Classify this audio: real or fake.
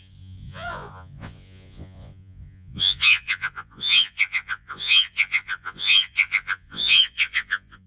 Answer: fake